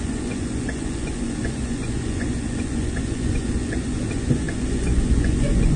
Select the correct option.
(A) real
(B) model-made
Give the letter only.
B